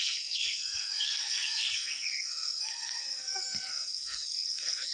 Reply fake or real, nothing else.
fake